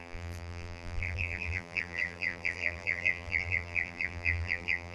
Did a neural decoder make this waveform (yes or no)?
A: yes